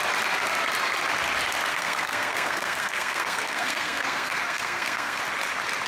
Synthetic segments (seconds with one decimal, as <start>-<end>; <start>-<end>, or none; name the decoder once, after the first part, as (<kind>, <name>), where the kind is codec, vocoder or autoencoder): 1.7-5.2 (codec, SNAC)